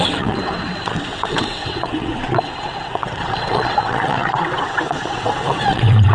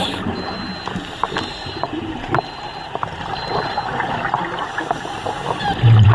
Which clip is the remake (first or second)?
first